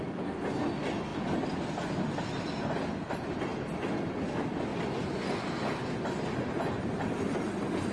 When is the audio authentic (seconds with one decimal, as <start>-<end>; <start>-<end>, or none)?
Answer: 0.0-7.9